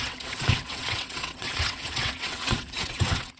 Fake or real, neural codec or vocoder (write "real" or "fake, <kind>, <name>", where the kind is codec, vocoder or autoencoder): fake, vocoder, WaveNeXt